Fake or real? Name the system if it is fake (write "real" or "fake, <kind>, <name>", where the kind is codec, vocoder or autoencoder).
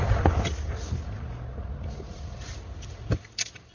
real